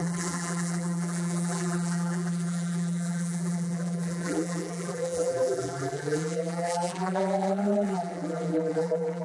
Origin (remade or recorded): remade